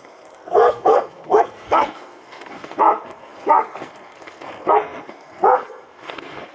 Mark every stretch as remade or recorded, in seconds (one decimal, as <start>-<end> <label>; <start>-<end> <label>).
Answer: 0.0-6.5 remade